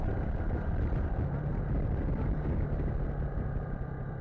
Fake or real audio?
real